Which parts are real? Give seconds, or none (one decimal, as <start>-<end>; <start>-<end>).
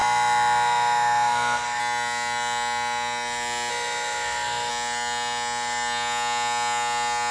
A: 1.8-3.7; 4.7-7.3